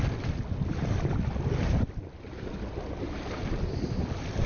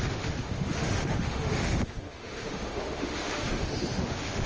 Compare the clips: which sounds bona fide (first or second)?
first